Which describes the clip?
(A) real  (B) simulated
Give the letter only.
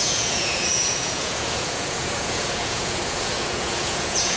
B